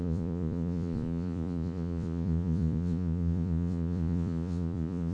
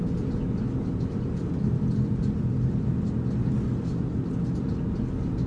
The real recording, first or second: second